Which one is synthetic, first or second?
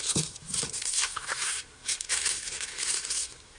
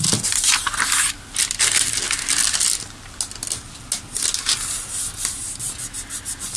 first